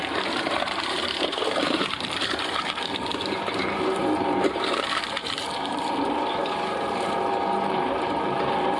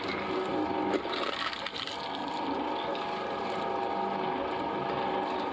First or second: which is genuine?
second